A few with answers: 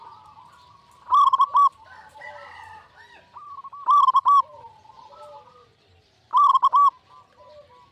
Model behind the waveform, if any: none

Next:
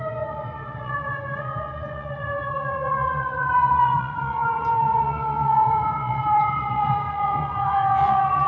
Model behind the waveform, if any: vocoder, Vocos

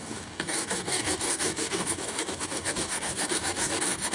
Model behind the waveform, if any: codec, DAC